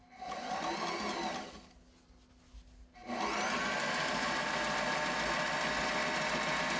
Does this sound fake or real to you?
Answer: real